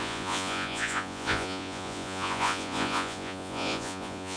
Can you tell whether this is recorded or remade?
remade